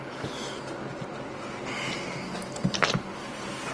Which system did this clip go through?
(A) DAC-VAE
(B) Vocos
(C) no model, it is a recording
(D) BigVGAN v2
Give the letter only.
C